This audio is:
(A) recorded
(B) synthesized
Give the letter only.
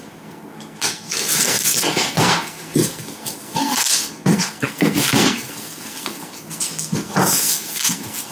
B